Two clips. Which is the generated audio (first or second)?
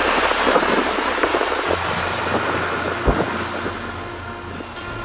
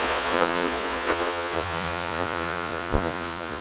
second